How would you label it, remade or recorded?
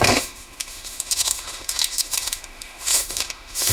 remade